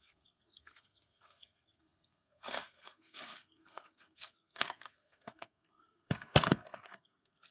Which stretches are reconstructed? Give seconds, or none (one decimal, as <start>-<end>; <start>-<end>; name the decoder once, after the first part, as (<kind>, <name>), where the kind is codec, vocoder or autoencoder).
0.0-7.5 (codec, SNAC)